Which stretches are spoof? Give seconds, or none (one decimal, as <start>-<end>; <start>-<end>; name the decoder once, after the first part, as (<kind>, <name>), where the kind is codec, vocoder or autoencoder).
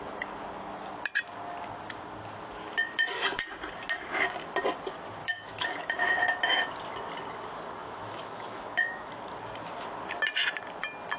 5.2-6.7 (autoencoder, DAC-VAE); 7.8-9.1